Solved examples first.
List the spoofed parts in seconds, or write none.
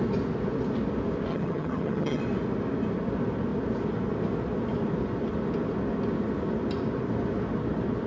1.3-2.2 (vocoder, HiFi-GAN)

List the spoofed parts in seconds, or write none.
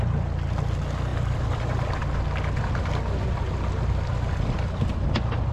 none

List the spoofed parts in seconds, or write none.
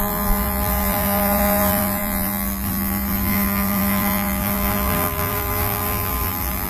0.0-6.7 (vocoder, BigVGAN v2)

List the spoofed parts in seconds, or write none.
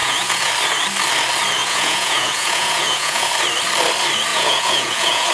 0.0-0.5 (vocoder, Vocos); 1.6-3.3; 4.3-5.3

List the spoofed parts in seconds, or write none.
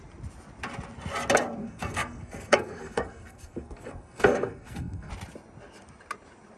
1.6-5.1 (codec, SNAC)